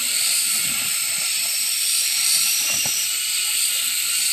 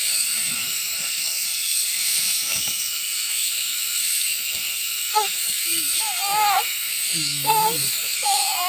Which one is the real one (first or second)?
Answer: first